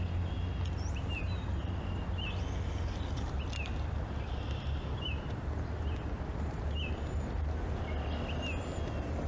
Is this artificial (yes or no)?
no